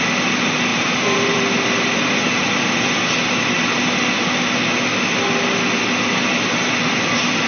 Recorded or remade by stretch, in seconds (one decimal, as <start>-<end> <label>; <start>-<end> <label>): 0.0-0.7 recorded; 0.7-2.5 remade; 2.5-7.5 recorded